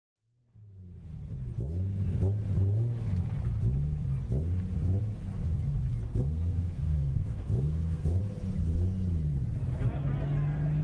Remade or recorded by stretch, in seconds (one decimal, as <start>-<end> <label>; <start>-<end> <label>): 0.0-6.1 recorded; 6.1-8.2 remade; 8.2-10.8 recorded